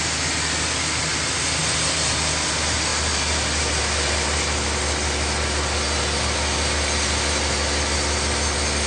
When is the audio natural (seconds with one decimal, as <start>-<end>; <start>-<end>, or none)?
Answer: 0.0-8.9